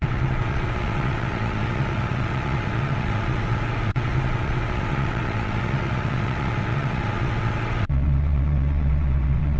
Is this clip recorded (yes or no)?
no